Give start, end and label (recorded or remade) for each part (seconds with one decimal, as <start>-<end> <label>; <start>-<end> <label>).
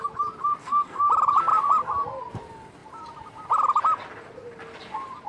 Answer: 0.0-0.6 recorded; 0.6-1.1 remade; 1.1-5.3 recorded